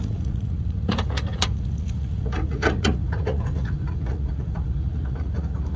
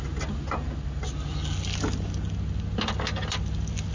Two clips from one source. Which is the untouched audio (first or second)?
second